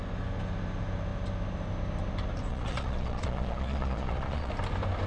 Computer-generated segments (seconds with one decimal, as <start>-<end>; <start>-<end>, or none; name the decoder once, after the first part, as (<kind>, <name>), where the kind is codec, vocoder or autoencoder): 2.5-4.5 (vocoder, Vocos)